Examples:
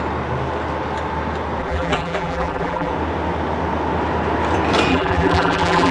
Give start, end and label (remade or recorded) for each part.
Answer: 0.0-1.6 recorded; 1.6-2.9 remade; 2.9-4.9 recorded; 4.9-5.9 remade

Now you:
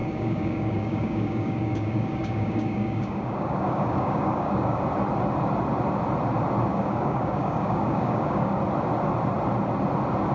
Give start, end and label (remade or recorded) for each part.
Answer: 0.0-4.8 remade; 4.8-6.7 recorded; 6.7-8.6 remade; 8.6-10.3 recorded

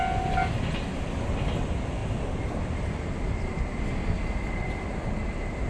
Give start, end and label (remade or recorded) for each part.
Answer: 0.0-5.7 recorded

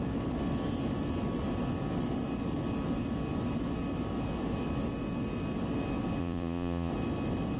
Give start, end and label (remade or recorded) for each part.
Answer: 0.0-6.2 recorded; 6.2-6.9 remade; 6.9-7.6 recorded

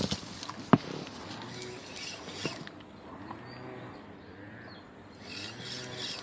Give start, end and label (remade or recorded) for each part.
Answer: 0.0-6.2 recorded

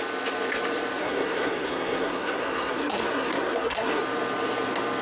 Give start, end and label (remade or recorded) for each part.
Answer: 0.0-1.0 recorded; 1.0-4.0 remade; 4.0-5.0 recorded